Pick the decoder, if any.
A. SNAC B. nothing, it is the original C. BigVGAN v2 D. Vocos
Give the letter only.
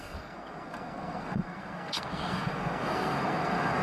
A